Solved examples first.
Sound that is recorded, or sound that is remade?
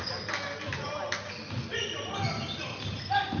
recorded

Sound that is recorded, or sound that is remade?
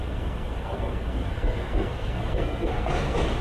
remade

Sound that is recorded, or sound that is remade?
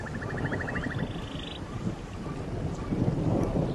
recorded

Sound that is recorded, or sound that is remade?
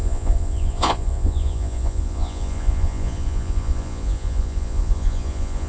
remade